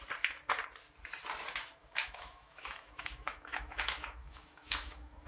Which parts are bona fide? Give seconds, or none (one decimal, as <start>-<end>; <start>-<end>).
0.0-1.8